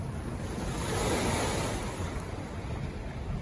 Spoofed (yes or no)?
no